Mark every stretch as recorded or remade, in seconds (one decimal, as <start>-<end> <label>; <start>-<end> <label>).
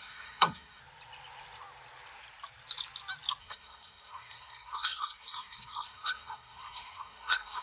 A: 0.0-0.8 remade; 0.8-3.4 recorded; 3.4-7.6 remade